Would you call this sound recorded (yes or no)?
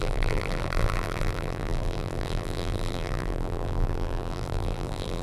no